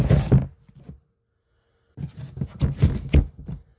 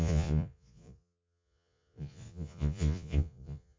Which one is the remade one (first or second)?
second